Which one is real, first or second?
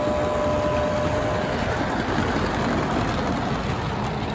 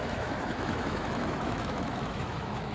first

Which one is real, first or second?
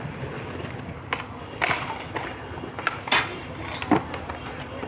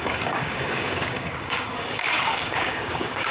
first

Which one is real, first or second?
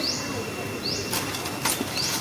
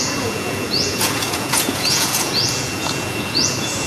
first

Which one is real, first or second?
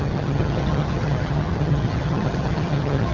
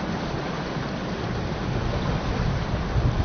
second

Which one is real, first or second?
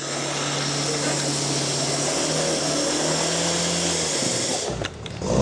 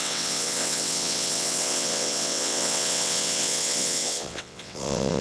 first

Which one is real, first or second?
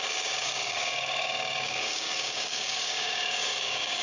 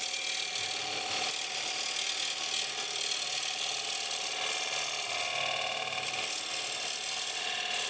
second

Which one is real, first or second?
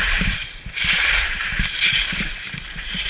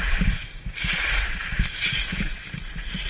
second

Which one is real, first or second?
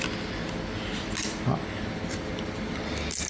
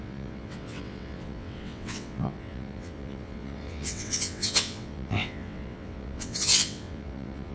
first